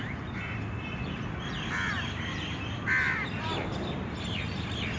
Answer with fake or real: real